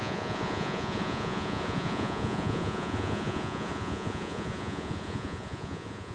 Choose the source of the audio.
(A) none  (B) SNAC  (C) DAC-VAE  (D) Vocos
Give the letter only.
D